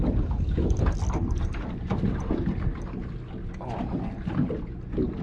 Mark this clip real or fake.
real